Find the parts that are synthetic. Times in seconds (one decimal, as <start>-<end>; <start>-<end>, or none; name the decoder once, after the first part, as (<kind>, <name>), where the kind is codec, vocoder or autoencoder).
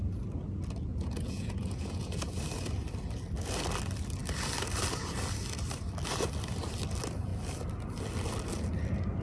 0.9-2.2 (vocoder, Vocos)